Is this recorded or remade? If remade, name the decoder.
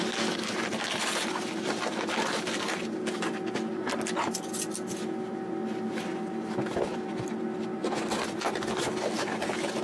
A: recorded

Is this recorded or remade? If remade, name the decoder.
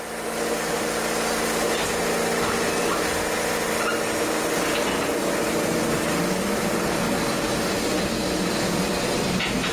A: recorded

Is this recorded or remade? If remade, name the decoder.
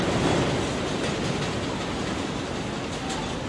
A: recorded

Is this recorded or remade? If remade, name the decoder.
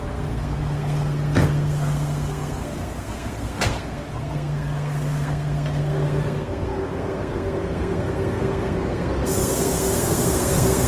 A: remade, codec, SNAC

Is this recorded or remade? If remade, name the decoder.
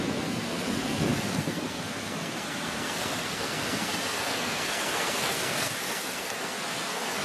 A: remade, codec, SNAC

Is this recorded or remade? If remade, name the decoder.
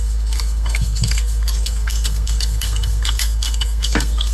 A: remade, codec, SNAC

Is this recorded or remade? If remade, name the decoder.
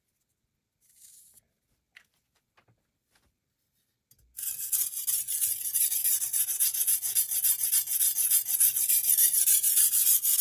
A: recorded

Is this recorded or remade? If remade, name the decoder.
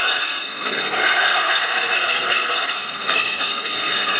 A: remade, codec, SNAC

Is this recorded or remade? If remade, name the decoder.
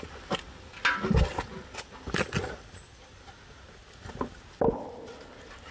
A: recorded